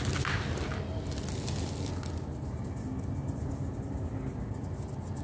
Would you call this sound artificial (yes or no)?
no